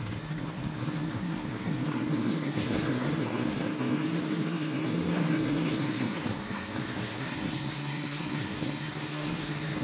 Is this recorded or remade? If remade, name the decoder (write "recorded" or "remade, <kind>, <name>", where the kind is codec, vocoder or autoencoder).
remade, codec, SNAC